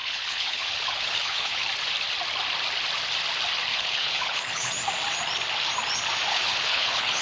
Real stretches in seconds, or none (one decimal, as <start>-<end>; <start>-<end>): 1.6-3.7; 4.7-6.3